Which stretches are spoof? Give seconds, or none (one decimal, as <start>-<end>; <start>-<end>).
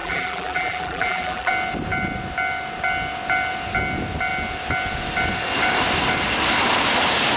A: 0.0-1.5